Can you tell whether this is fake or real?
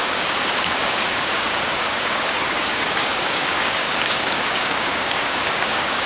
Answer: fake